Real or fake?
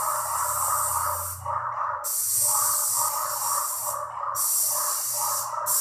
real